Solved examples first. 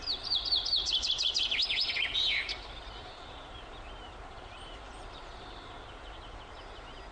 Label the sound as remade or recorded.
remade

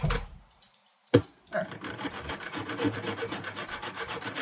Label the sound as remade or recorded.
remade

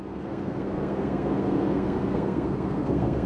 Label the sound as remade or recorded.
remade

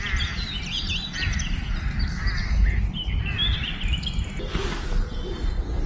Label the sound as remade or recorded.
recorded